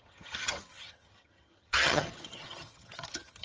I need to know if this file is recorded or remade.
remade